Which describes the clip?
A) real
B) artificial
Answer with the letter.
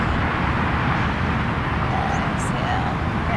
A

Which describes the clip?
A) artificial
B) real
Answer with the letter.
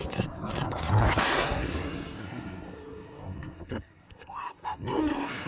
A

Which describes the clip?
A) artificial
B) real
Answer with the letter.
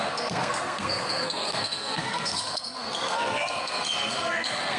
A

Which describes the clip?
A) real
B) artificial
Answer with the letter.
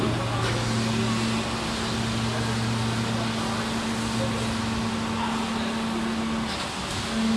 A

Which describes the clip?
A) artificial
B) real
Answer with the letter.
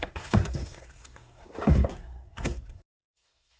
A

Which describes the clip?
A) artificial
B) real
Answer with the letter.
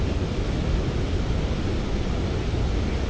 B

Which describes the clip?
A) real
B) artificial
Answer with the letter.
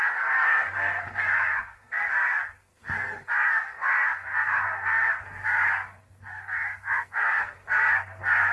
B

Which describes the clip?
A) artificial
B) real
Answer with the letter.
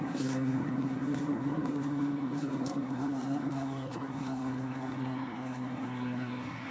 A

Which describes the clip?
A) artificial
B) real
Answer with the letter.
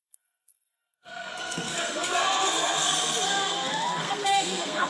A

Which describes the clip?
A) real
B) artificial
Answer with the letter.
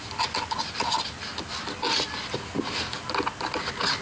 A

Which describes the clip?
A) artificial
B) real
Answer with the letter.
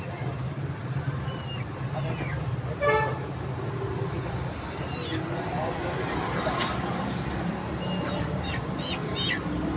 B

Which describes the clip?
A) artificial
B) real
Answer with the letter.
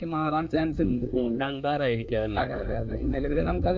A